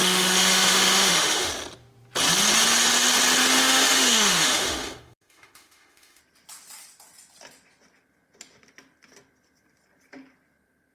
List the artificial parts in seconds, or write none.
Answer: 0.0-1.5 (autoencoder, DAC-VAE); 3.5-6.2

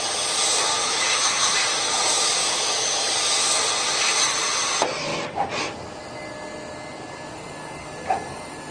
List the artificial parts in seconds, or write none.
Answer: 0.8-1.6 (autoencoder, DAC-VAE); 2.4-3.1

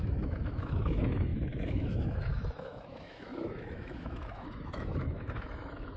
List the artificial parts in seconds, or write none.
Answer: 0.0-6.0 (autoencoder, DAC-VAE)

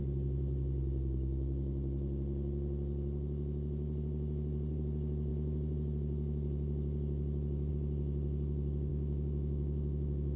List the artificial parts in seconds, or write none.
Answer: 8.9-10.4 (autoencoder, DAC-VAE)

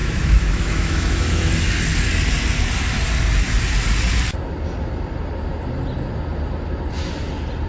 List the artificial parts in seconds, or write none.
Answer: 0.0-1.5 (autoencoder, DAC-VAE)

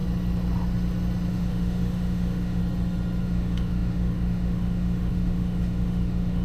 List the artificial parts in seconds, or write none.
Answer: 1.3-2.6 (autoencoder, DAC-VAE); 3.2-6.4

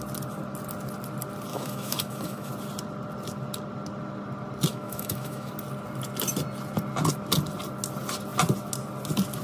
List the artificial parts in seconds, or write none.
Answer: 1.5-2.5 (autoencoder, DAC-VAE); 4.7-5.5